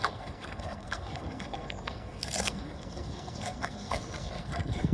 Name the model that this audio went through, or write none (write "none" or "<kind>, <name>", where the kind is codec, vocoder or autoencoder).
codec, SNAC